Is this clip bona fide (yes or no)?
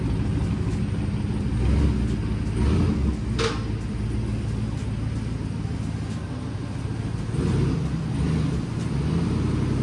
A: yes